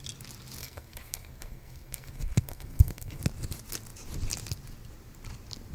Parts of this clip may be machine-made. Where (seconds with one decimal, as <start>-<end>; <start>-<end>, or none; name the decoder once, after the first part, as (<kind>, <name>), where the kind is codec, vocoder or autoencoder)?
0.6-3.2 (codec, SNAC)